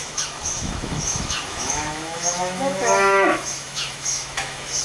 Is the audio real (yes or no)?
no